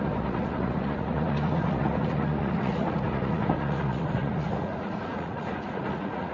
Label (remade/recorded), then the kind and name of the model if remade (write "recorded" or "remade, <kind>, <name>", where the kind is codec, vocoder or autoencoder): remade, vocoder, Vocos